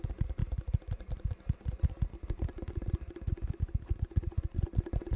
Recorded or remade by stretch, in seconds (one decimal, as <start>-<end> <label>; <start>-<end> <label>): 0.0-5.2 recorded